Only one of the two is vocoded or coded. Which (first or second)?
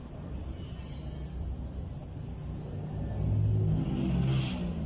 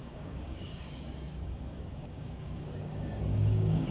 second